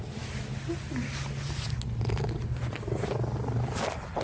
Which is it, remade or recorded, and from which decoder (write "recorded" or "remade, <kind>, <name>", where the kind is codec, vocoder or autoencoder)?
recorded